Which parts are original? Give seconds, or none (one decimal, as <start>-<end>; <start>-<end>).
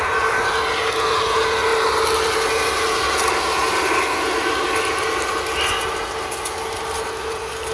0.0-7.7